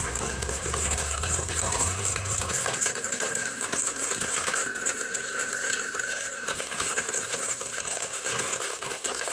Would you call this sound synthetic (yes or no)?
yes